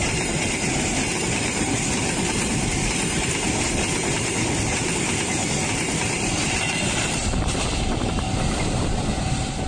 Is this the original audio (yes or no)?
no